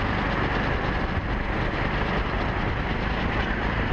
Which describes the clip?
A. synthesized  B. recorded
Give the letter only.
B